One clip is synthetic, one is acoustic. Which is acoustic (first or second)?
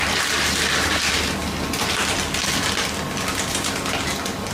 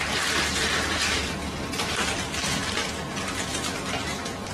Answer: first